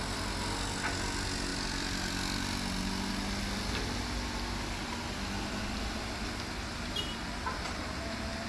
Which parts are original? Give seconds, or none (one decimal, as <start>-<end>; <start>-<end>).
0.0-8.5